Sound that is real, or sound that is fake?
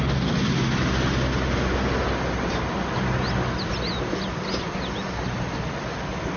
real